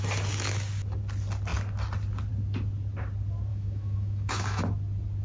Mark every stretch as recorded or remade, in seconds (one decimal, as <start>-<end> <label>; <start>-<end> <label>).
0.0-3.5 recorded; 3.5-4.6 remade; 4.6-5.2 recorded